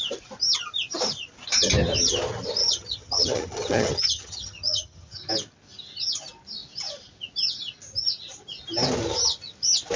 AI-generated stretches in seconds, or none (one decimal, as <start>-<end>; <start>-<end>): 2.6-5.3